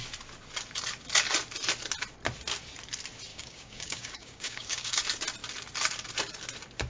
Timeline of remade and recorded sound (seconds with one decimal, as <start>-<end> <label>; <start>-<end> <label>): 0.0-3.3 recorded; 3.3-5.0 remade; 5.0-6.9 recorded